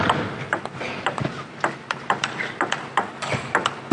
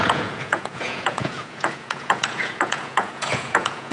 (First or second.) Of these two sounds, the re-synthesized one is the second